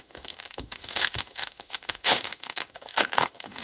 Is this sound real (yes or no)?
no